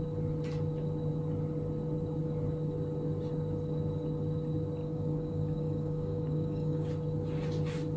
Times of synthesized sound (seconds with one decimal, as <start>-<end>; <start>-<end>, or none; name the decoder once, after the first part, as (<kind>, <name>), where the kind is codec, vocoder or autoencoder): 4.8-6.9 (codec, DAC)